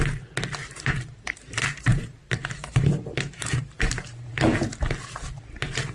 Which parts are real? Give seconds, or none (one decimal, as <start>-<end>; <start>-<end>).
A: 0.0-0.6; 1.1-1.9; 4.3-5.9